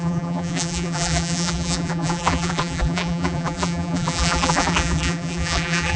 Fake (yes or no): yes